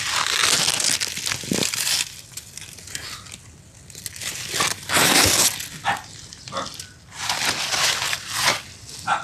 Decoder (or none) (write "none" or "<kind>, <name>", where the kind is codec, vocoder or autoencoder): none